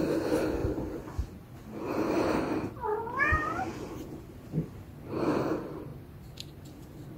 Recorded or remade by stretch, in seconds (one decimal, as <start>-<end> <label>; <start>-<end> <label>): 0.0-7.2 recorded